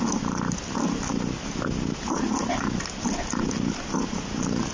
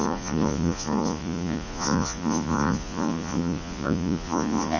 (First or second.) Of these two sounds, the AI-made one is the second